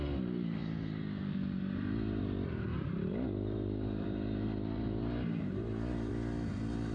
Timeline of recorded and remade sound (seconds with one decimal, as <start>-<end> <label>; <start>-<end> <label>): 0.0-2.7 recorded; 2.7-6.1 remade; 6.1-6.9 recorded